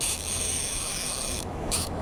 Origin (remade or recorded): remade